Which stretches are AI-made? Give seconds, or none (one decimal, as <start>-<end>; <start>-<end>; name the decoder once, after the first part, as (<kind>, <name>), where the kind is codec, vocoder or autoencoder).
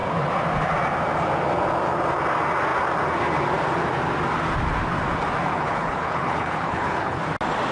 5.5-7.2 (codec, HILCodec)